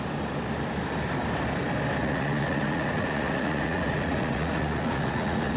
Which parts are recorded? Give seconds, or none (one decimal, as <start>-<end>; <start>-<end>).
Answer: 0.0-2.0

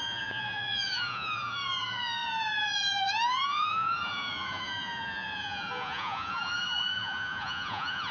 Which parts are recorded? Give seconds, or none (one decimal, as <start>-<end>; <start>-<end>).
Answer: none

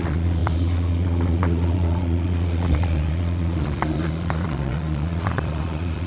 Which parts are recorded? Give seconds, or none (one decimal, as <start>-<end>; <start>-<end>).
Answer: none

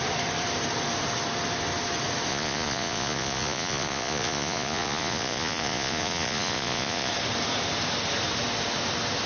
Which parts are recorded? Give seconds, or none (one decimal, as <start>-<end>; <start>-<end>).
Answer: 0.0-2.3; 7.1-9.3

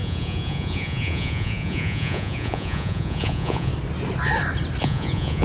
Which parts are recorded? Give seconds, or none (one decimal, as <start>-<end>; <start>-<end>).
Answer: 3.7-4.8

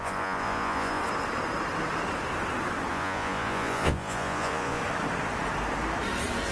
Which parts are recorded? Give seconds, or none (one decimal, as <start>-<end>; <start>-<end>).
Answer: 1.0-2.9; 4.8-6.5

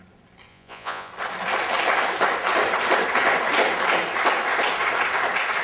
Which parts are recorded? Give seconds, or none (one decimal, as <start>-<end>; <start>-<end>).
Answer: 0.0-0.5; 1.1-5.6